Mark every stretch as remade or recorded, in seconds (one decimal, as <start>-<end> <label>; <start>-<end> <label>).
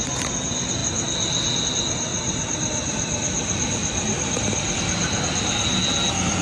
0.0-6.4 recorded